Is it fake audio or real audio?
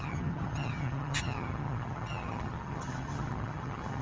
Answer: fake